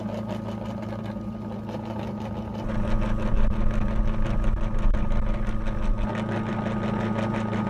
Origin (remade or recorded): recorded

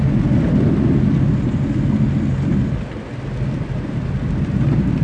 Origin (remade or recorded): recorded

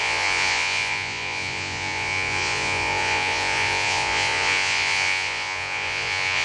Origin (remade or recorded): remade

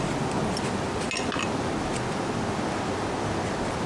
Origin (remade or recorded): recorded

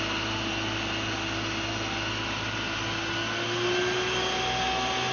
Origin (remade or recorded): recorded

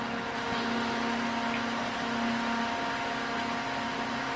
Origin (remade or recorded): recorded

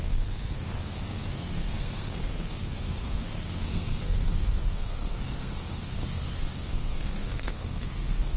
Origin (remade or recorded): remade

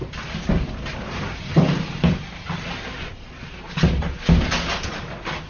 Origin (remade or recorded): recorded